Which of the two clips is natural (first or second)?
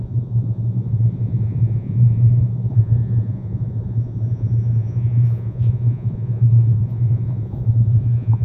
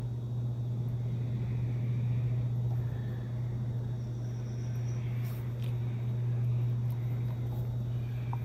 second